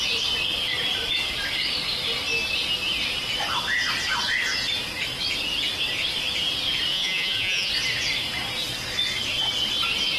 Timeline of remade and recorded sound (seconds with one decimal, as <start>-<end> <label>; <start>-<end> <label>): 0.0-6.9 recorded; 6.9-7.7 remade; 7.7-10.2 recorded